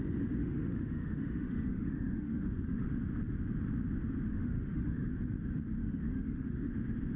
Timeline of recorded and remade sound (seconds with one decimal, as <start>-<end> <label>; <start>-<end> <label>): 0.0-0.4 recorded; 0.4-2.9 remade; 2.9-4.3 recorded; 4.3-5.1 remade; 5.1-5.8 recorded; 5.8-6.7 remade; 6.7-7.2 recorded